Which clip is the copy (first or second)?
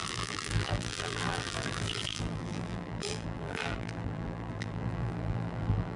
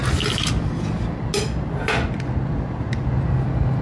first